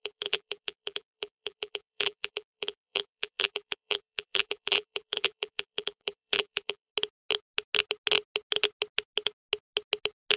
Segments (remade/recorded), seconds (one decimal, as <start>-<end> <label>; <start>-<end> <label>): 0.0-6.9 remade; 6.9-10.4 recorded